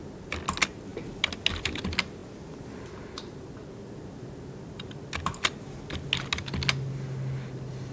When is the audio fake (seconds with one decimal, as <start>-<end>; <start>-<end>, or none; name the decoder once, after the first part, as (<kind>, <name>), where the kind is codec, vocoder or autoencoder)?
none